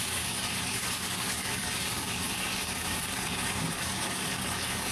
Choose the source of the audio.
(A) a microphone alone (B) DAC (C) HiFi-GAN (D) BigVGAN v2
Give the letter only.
B